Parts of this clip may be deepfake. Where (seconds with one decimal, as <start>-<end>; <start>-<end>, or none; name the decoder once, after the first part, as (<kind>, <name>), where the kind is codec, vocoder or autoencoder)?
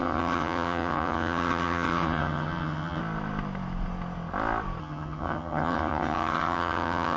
0.0-3.0 (vocoder, HiFi-GAN); 4.8-7.2